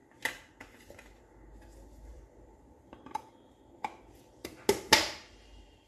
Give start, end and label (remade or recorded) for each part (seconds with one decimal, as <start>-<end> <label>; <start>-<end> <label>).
0.0-2.1 recorded; 2.1-4.6 remade; 4.6-5.9 recorded